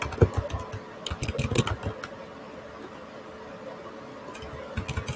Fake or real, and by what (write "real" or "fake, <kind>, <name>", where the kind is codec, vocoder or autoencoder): real